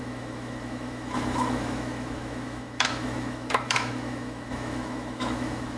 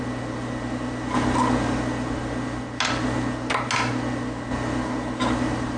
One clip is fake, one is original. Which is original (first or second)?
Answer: second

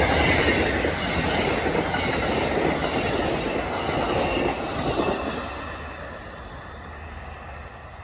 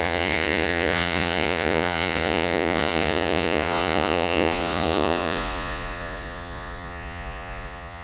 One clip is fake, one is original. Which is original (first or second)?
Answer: first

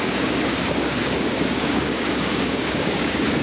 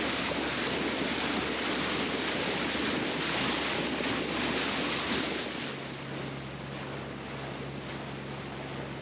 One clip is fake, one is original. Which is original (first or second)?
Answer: second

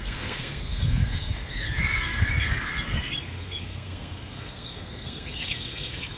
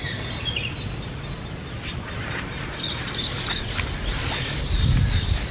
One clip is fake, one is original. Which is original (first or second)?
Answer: second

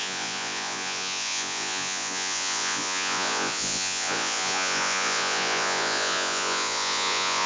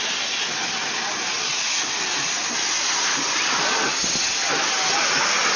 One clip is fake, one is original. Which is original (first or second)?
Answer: second